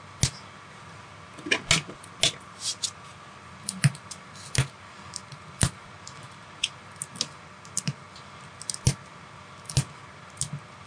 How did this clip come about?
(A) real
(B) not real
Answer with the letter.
A